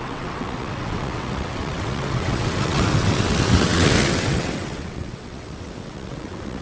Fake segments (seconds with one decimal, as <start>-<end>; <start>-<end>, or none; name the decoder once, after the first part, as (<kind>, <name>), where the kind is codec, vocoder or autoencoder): 0.0-6.6 (vocoder, WaveNeXt)